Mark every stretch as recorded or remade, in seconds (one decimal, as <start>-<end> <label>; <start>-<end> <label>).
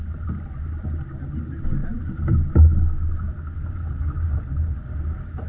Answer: 0.0-5.5 recorded